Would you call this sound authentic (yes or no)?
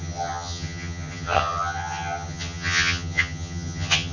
no